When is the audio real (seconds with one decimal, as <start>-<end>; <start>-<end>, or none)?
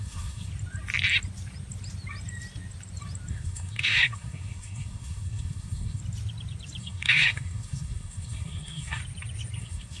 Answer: 0.5-3.3; 6.0-6.8; 9.0-9.6